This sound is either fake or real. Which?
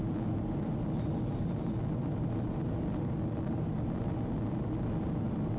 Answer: real